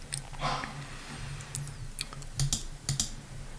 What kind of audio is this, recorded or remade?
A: recorded